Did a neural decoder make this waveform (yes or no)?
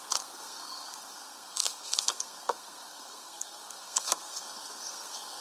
yes